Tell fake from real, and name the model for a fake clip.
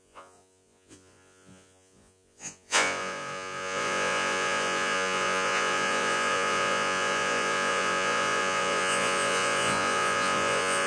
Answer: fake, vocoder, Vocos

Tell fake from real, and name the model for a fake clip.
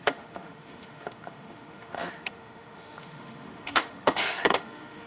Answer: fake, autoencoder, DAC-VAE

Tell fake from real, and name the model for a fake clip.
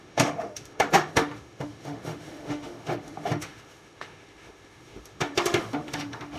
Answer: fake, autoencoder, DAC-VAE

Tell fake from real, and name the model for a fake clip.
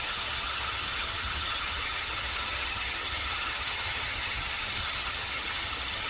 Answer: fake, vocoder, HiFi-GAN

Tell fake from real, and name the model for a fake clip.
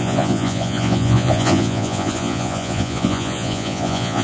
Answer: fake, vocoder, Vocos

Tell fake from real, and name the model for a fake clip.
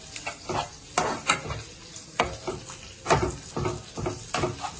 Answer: real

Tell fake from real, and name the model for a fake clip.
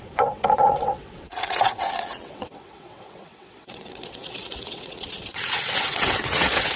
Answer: fake, vocoder, WaveNeXt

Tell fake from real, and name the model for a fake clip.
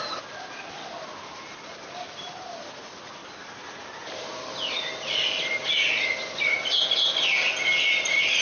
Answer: real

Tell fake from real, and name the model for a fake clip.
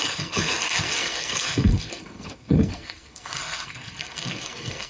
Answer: fake, codec, SNAC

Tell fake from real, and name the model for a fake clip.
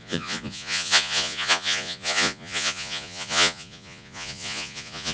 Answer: fake, vocoder, Vocos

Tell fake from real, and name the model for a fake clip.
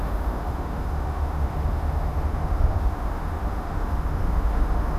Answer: fake, autoencoder, DAC-VAE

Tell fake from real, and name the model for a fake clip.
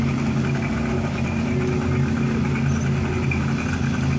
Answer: real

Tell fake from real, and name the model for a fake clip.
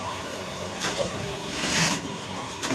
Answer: fake, codec, SNAC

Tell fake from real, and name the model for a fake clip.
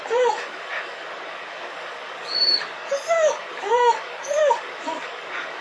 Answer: fake, codec, DAC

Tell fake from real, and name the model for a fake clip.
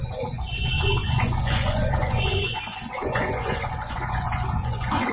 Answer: fake, vocoder, Vocos